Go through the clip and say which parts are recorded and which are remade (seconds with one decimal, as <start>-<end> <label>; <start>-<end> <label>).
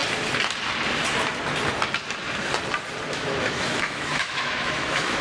0.0-3.1 recorded; 3.1-5.2 remade